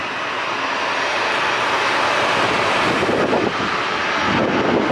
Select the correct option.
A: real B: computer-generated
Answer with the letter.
A